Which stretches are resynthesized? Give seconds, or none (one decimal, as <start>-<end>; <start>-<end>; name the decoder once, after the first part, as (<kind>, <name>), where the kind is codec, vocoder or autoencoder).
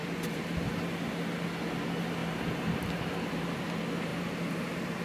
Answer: 0.0-0.7 (vocoder, BigVGAN v2); 2.2-3.4; 4.1-5.0